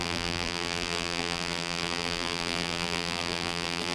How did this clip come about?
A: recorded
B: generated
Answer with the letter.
B